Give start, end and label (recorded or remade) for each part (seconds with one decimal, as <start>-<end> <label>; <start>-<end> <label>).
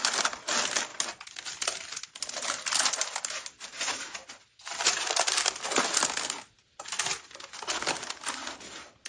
0.0-9.1 recorded